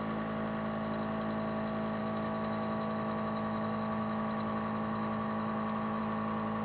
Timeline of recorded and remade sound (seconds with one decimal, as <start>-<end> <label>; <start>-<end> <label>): 0.0-2.0 recorded; 2.0-6.0 remade; 6.0-6.6 recorded